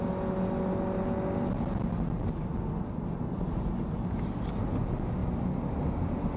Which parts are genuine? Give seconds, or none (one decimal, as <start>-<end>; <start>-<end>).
0.0-6.4